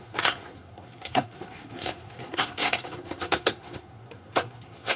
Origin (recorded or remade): remade